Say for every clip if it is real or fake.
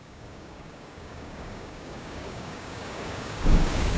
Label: fake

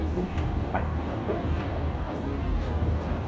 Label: fake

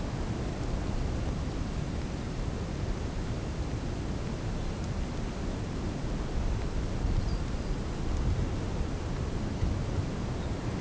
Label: real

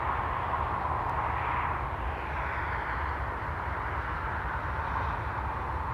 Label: real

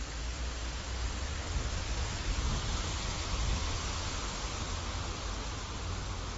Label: real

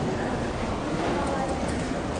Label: real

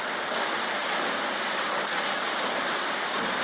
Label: real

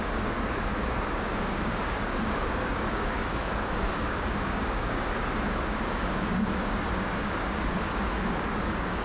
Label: fake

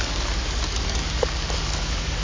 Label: fake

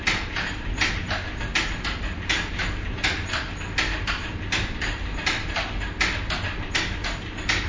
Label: real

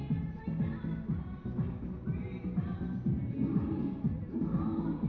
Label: real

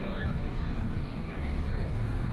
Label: fake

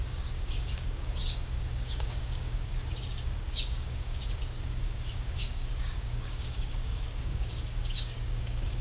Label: fake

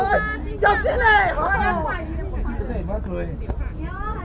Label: real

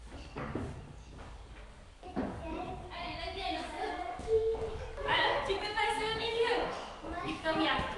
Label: fake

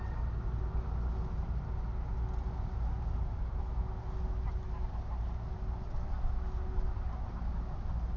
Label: real